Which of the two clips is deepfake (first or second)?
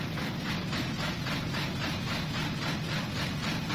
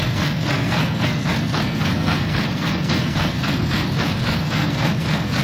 second